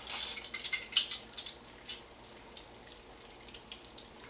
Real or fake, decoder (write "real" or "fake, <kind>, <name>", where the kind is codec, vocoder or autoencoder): real